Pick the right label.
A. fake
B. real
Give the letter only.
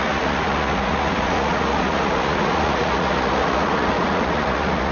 A